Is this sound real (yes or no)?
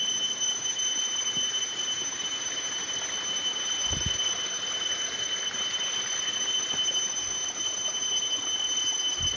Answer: yes